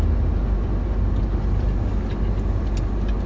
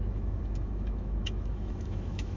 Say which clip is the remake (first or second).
second